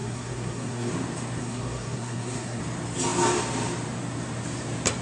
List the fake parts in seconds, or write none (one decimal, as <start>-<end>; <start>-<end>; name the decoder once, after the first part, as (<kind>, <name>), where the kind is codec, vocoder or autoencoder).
0.0-0.9 (codec, SNAC); 1.4-2.6